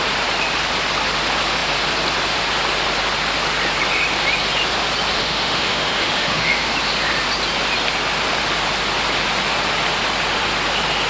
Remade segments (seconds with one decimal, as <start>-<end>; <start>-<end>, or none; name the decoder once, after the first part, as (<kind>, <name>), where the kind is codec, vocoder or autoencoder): 5.2-6.7 (autoencoder, DAC-VAE)